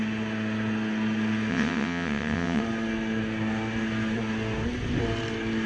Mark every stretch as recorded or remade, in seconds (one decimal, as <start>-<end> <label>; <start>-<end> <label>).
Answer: 0.0-1.5 recorded; 1.5-2.6 remade; 2.6-5.7 recorded